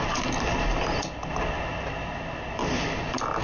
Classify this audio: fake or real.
real